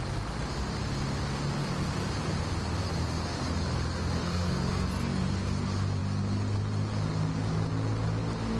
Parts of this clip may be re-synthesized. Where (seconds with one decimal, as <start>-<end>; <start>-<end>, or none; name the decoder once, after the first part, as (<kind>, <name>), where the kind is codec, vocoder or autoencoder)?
4.2-5.2 (codec, SNAC)